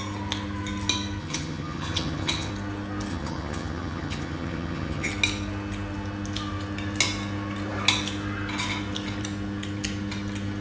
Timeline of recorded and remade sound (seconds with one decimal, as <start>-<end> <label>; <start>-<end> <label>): 0.0-1.2 recorded; 1.2-2.5 remade; 2.5-3.1 recorded; 3.1-5.1 remade; 5.1-10.6 recorded